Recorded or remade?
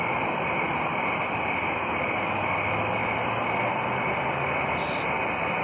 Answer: recorded